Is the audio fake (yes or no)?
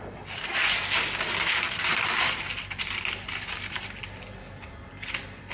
no